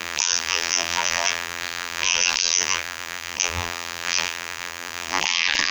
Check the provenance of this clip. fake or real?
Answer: fake